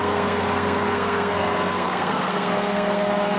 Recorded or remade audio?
remade